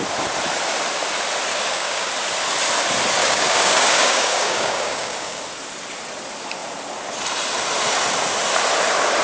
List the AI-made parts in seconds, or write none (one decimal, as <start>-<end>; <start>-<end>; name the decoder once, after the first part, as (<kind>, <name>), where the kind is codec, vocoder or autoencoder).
1.5-2.1 (codec, DAC); 3.2-5.4